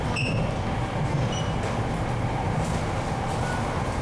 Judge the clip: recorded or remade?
recorded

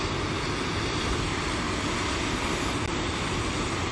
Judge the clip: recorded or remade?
recorded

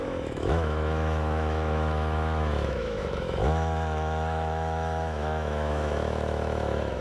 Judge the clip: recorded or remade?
remade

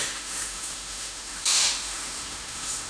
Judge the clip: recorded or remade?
remade